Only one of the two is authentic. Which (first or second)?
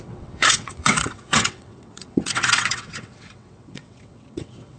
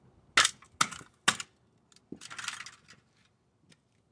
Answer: second